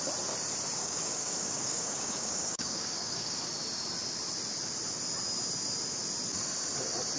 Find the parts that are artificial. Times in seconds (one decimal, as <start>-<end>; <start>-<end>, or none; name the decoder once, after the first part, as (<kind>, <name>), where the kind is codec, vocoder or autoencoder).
0.8-3.4 (codec, DAC)